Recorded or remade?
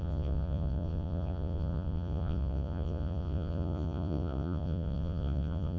remade